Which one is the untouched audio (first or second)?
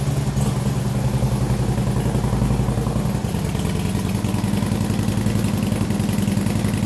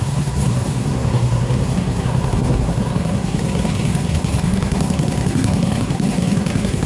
first